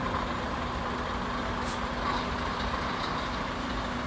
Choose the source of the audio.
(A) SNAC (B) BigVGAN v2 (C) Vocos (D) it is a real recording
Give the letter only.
D